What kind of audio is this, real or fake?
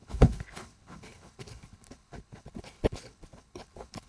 fake